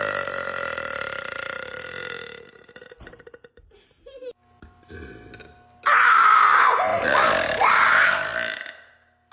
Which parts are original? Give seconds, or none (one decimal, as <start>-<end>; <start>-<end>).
0.0-9.3